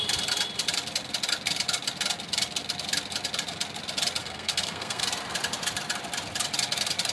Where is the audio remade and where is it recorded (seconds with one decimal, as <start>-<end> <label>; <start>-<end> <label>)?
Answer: 0.0-4.2 recorded; 4.2-5.0 remade; 5.0-7.1 recorded